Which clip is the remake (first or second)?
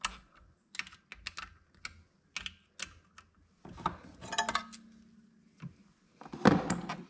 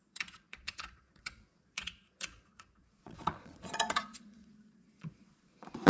second